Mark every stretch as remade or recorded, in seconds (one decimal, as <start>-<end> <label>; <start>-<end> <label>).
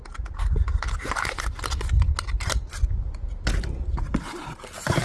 0.0-5.0 recorded